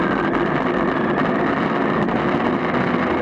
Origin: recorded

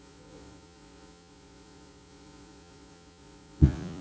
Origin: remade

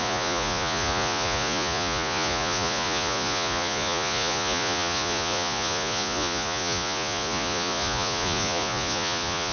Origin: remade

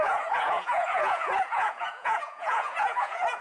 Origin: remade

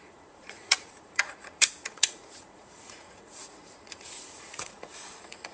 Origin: remade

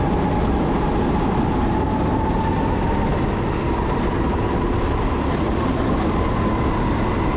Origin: recorded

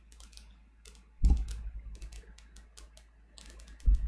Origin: recorded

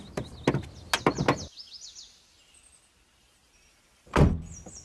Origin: recorded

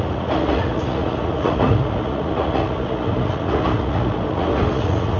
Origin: remade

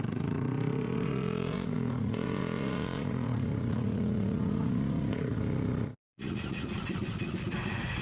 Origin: remade